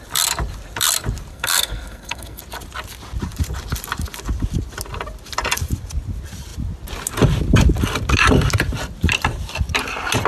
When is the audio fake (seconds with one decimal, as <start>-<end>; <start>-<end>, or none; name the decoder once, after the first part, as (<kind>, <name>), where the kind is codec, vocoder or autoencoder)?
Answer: 1.3-2.4 (codec, SNAC)